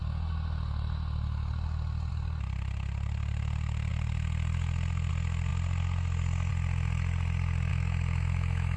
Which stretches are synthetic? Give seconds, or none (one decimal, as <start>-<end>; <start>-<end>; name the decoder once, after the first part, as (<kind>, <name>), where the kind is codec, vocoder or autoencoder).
7.7-8.8 (autoencoder, DAC-VAE)